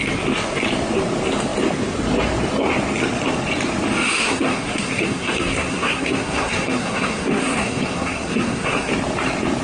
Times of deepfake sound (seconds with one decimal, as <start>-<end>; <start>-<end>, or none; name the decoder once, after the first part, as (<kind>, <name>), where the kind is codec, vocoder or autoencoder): 4.2-8.9 (codec, SNAC)